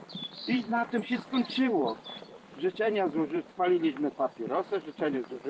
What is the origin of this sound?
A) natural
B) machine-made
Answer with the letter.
B